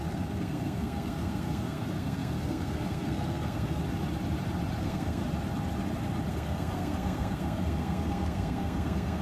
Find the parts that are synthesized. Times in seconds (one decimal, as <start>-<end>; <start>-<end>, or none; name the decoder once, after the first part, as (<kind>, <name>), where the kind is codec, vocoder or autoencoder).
0.0-3.8 (codec, SNAC); 4.8-5.2; 6.3-9.2